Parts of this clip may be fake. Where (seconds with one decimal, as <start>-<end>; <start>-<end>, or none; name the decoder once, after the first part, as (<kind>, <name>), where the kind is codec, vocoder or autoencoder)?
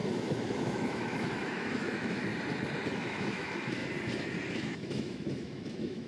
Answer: 0.0-2.3 (autoencoder, DAC-VAE); 2.9-3.8; 4.5-6.1